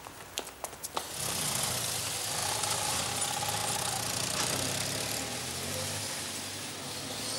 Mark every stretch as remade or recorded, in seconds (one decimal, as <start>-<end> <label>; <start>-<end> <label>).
0.0-7.4 recorded